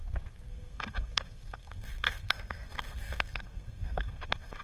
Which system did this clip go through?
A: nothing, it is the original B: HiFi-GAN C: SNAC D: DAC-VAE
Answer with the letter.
C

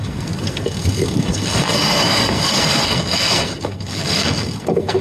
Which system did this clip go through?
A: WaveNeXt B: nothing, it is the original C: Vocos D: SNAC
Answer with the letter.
D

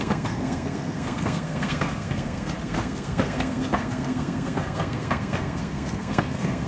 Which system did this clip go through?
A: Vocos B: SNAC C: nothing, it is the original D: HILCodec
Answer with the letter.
B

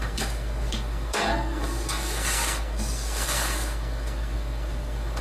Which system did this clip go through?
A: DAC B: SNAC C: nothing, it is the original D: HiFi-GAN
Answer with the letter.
B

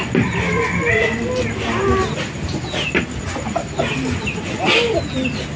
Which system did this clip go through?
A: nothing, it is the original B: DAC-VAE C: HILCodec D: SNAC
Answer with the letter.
A